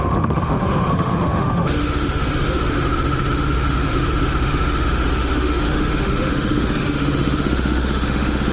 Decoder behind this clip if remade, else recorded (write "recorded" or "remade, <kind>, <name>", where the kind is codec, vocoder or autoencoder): remade, autoencoder, DAC-VAE